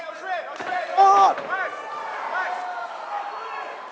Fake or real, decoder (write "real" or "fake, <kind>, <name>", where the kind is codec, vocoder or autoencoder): real